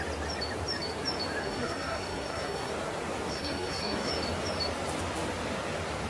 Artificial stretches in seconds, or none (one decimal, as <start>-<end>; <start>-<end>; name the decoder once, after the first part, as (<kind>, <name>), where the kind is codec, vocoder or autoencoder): 1.4-2.7 (codec, SNAC); 3.3-4.1